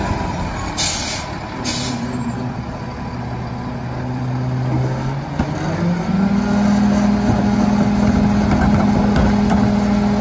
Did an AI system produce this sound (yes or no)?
no